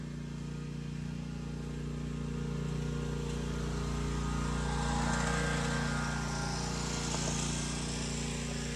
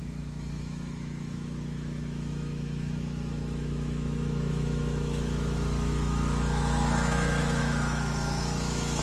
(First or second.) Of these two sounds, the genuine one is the first